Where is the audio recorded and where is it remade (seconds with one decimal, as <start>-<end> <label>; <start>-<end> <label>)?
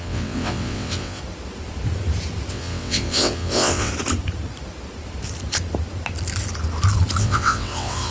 0.0-1.2 remade; 1.2-2.5 recorded; 2.5-3.9 remade; 3.9-7.2 recorded; 7.2-8.1 remade